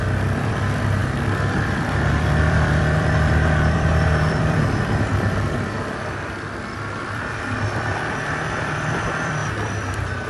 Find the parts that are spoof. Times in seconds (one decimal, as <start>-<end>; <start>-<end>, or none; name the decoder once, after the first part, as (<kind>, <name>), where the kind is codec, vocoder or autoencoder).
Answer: 0.0-1.0 (vocoder, BigVGAN v2); 2.1-9.4